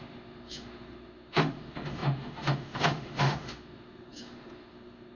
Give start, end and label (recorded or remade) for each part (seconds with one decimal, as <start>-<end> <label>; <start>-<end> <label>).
0.0-5.2 remade

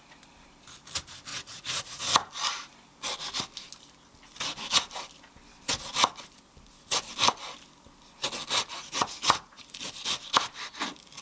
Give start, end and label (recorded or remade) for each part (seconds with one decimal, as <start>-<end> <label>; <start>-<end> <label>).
0.0-1.3 recorded; 1.3-2.0 remade; 2.0-8.7 recorded; 8.7-9.6 remade; 9.6-11.2 recorded